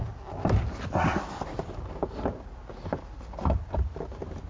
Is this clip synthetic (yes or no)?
no